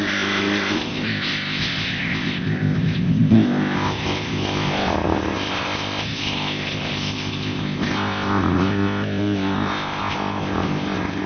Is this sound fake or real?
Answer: fake